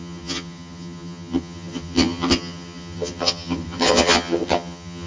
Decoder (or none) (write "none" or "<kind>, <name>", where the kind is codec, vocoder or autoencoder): vocoder, HiFi-GAN